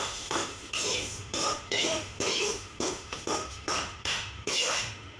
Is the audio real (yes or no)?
no